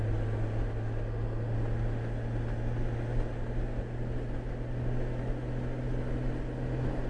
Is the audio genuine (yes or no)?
yes